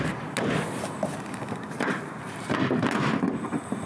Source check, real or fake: real